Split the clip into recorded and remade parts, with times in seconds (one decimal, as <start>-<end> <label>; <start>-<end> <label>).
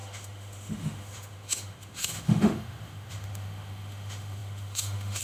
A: 0.0-5.2 remade